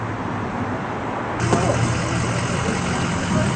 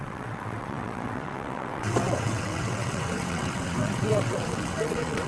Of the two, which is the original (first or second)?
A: first